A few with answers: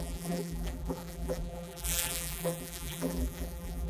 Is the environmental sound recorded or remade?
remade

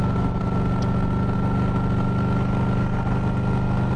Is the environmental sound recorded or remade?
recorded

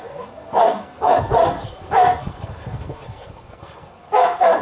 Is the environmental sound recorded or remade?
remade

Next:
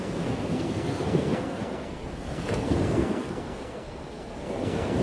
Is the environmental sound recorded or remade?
remade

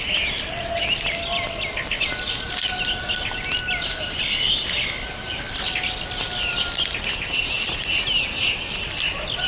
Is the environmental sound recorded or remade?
recorded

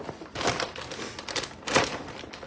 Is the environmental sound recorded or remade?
recorded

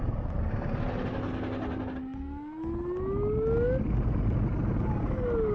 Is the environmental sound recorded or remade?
recorded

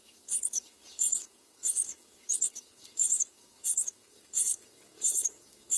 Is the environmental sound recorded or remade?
remade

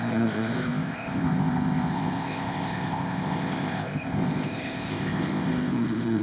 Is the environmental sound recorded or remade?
remade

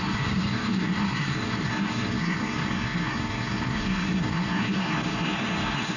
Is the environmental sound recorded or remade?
remade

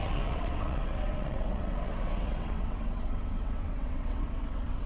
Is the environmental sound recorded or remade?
remade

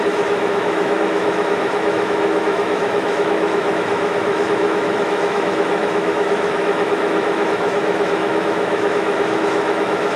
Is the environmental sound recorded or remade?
remade